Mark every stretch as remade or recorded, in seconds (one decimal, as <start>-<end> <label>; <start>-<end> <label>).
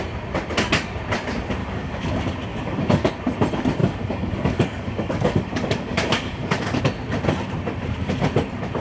0.0-1.6 recorded; 1.6-2.1 remade; 2.1-2.5 recorded; 2.5-3.1 remade; 3.1-3.8 recorded; 3.8-6.8 remade; 6.8-8.8 recorded